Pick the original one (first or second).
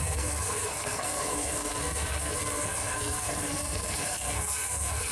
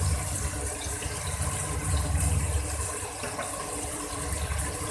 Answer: second